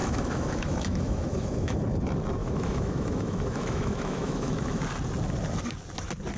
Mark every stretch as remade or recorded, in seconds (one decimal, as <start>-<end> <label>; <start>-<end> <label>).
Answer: 0.0-1.8 remade; 1.8-2.4 recorded; 2.4-4.8 remade; 4.8-6.4 recorded